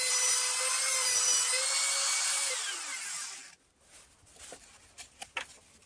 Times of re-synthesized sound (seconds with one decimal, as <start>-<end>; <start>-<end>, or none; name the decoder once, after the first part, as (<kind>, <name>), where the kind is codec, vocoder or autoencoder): none